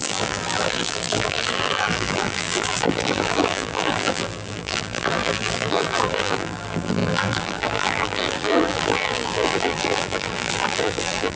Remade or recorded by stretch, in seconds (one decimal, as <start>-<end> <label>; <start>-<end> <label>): 0.0-11.4 remade

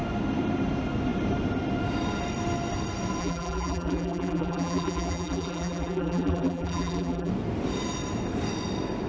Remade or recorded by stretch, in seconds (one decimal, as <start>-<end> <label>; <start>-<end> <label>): 0.0-3.2 recorded; 3.2-7.3 remade; 7.3-9.1 recorded

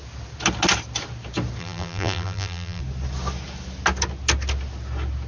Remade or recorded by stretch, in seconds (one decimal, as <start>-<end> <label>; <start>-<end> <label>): 0.0-1.6 recorded; 1.6-2.8 remade; 2.8-5.3 recorded

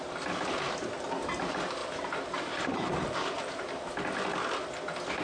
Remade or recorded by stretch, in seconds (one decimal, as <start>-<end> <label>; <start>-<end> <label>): 0.0-1.8 recorded; 1.8-3.7 remade; 3.7-5.2 recorded

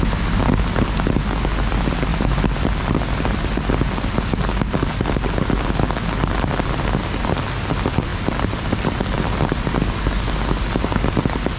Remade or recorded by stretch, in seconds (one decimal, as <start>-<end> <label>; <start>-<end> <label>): 0.0-2.1 recorded; 2.1-3.6 remade; 3.6-11.6 recorded

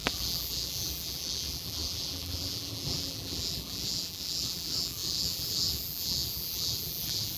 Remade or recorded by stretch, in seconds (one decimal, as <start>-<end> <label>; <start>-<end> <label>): 0.0-7.4 remade